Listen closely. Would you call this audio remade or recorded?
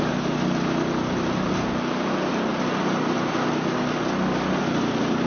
recorded